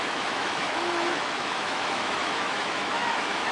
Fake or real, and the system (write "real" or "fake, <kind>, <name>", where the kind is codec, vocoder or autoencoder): fake, autoencoder, DAC-VAE